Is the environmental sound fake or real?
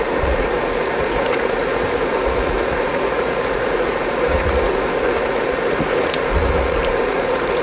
fake